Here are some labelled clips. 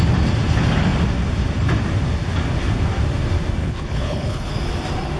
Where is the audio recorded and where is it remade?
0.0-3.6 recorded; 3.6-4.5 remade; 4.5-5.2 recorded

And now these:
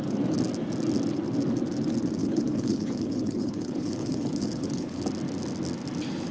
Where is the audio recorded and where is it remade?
0.0-2.2 recorded; 2.2-5.1 remade; 5.1-6.3 recorded

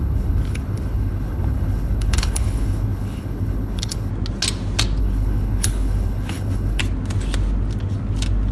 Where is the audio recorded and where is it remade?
0.0-4.1 remade; 4.1-5.0 recorded; 5.0-6.8 remade; 6.8-8.5 recorded

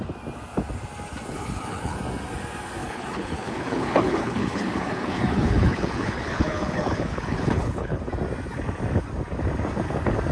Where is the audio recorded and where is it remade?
0.0-1.3 recorded; 1.3-2.0 remade; 2.0-2.8 recorded; 2.8-8.0 remade; 8.0-10.3 recorded